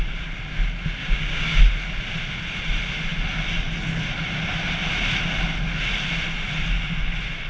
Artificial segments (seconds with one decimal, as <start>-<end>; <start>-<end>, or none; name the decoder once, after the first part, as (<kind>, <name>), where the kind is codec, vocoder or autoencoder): 1.0-1.6 (codec, DAC)